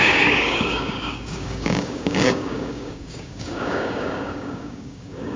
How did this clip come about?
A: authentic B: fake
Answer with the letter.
B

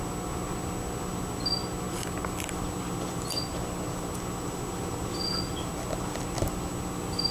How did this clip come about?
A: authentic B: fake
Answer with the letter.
A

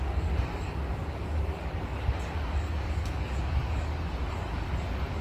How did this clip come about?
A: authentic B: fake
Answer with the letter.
B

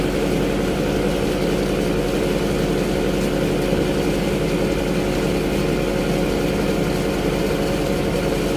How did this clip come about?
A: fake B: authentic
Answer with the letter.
B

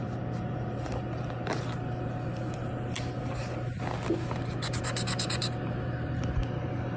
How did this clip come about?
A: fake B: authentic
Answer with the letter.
B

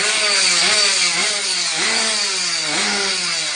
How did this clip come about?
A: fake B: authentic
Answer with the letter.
A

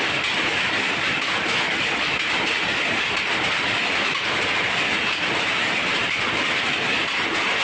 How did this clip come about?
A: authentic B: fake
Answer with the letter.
A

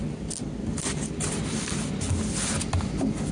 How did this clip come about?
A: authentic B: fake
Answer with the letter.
A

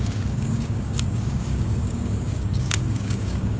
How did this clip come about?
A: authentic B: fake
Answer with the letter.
B